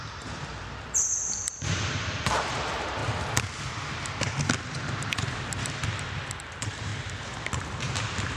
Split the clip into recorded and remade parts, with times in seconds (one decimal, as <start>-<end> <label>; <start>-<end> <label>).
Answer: 0.0-3.0 remade; 3.0-6.5 recorded; 6.5-6.9 remade; 6.9-7.9 recorded; 7.9-8.4 remade